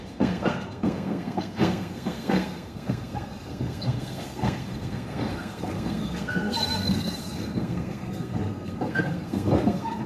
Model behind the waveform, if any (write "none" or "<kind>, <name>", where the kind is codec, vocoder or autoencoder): codec, SNAC